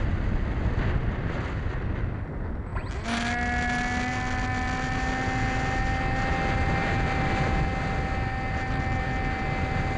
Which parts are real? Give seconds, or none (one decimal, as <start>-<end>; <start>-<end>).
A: 0.0-10.0